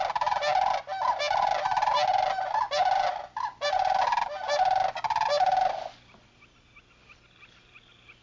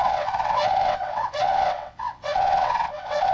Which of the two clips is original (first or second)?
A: first